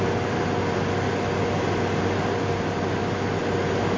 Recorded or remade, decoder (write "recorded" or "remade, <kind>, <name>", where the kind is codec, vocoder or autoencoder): recorded